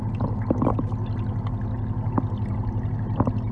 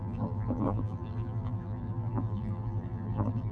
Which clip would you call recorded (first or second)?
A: first